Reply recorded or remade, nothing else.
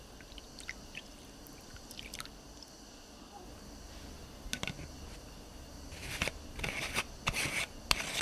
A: recorded